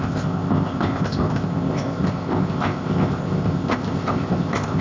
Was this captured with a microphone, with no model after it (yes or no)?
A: no